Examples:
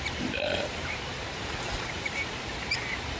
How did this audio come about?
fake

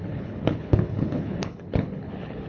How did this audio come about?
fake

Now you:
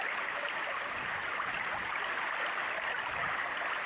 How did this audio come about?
real